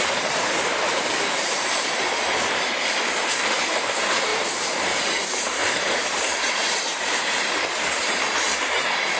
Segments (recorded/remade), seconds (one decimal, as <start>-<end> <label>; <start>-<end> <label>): 0.0-9.2 remade